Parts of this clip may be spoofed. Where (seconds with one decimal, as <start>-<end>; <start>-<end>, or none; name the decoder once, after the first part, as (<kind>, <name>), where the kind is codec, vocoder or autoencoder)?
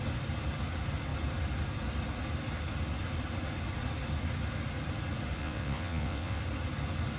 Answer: 5.4-6.4 (vocoder, WaveNeXt)